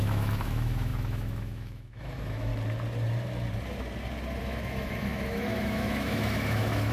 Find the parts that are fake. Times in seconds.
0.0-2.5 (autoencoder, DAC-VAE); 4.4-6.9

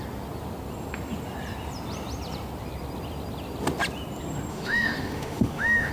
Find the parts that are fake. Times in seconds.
4.5-5.9 (autoencoder, DAC-VAE)

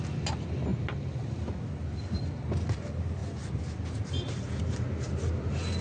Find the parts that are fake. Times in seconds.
none

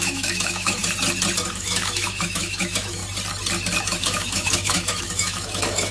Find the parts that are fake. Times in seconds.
0.0-0.8 (autoencoder, DAC-VAE); 1.5-3.0; 3.8-5.9